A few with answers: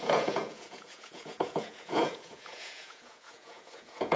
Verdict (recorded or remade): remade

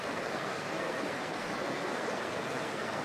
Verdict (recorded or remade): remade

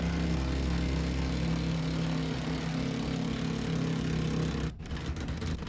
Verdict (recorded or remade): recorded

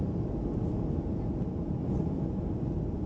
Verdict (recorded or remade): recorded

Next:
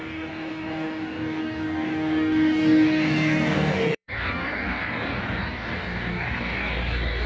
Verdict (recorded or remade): remade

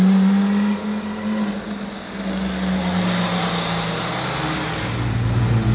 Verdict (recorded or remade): recorded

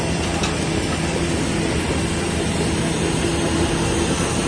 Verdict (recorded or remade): recorded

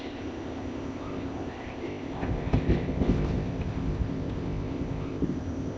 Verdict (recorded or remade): remade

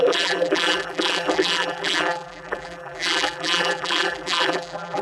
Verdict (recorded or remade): remade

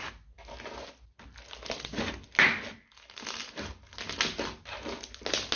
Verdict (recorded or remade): recorded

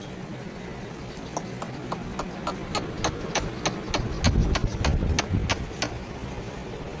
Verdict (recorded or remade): recorded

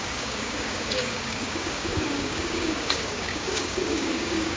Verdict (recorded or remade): remade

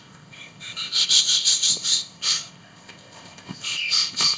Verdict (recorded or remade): remade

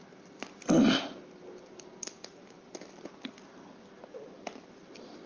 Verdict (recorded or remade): recorded